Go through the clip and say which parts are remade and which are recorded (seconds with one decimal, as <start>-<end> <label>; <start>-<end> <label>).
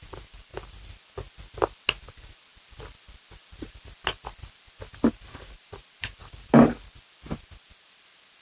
0.0-0.5 remade; 0.5-2.1 recorded; 2.1-2.5 remade; 2.5-5.1 recorded; 5.1-6.2 remade; 6.2-7.9 recorded; 7.9-8.4 remade